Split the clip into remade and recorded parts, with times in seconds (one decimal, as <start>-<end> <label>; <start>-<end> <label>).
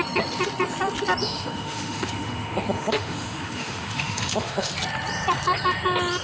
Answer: 0.0-1.2 recorded; 1.2-4.7 remade; 4.7-6.2 recorded